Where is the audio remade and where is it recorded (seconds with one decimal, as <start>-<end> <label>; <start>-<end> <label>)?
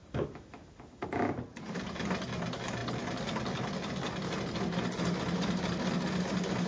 0.0-1.3 remade; 1.3-6.7 recorded